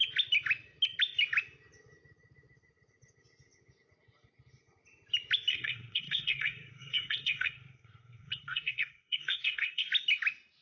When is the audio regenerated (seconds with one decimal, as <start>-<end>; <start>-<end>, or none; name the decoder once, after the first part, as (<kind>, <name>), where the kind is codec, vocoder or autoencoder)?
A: 5.5-9.9 (codec, SNAC)